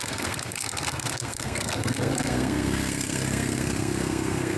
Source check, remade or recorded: remade